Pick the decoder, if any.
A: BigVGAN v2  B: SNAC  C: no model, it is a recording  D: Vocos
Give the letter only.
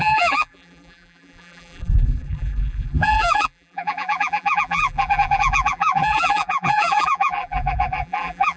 A